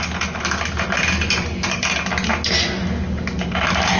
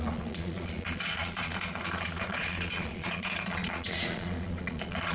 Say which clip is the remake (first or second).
second